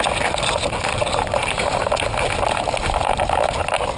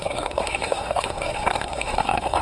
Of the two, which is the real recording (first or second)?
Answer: first